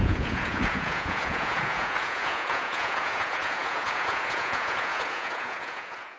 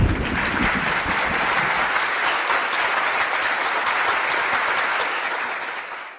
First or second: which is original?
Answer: second